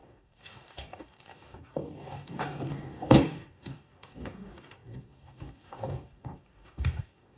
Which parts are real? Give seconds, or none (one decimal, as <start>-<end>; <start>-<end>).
none